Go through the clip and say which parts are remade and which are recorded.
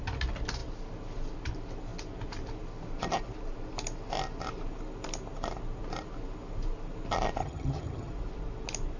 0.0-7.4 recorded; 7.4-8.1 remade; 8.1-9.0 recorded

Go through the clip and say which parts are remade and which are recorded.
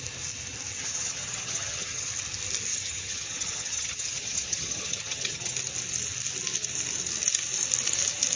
0.0-0.8 recorded; 0.8-2.1 remade; 2.1-2.7 recorded; 2.7-5.5 remade; 5.5-8.4 recorded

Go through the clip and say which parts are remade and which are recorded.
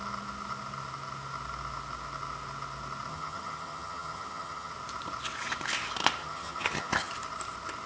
0.0-3.1 recorded; 3.1-4.7 remade; 4.7-6.2 recorded; 6.2-7.1 remade; 7.1-7.9 recorded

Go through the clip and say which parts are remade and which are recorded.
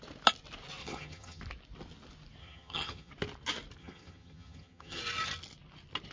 0.0-0.8 recorded; 0.8-1.4 remade; 1.4-2.4 recorded; 2.4-3.1 remade; 3.1-3.8 recorded; 3.8-5.0 remade; 5.0-6.1 recorded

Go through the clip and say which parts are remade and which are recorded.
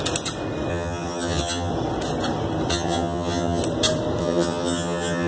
0.0-0.7 recorded; 0.7-1.7 remade; 1.7-2.7 recorded; 2.7-3.6 remade; 3.6-4.2 recorded; 4.2-5.3 remade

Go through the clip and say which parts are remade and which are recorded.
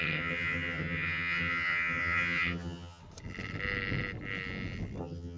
0.0-3.0 remade; 3.0-5.0 recorded; 5.0-5.4 remade